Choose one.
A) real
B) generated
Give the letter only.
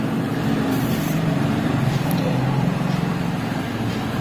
B